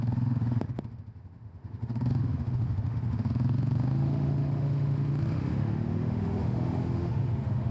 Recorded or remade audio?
remade